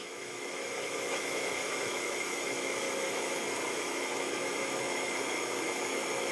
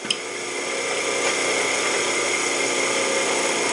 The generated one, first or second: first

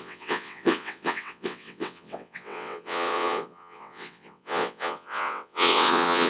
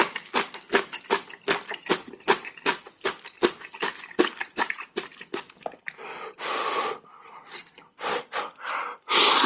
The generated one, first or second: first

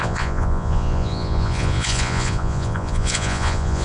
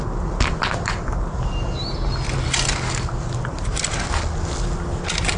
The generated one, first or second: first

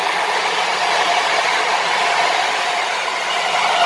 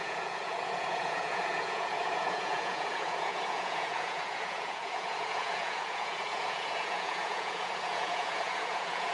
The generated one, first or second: second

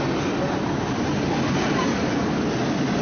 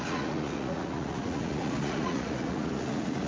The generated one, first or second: second